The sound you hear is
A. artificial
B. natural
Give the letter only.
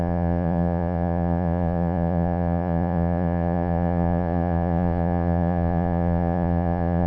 A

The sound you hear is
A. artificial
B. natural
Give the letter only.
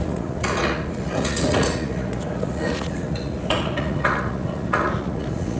A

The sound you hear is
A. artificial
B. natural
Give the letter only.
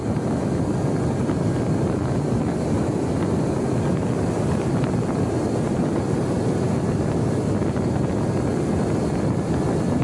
B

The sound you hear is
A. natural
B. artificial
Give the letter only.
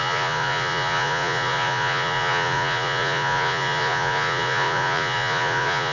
B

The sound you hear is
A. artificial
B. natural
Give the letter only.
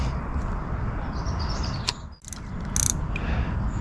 B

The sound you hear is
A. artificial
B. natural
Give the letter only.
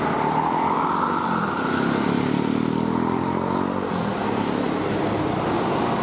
B